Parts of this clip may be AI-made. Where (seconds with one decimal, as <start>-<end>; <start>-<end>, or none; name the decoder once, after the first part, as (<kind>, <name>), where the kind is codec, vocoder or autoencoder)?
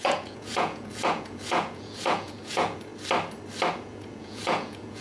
0.0-2.9 (vocoder, Vocos); 3.7-5.0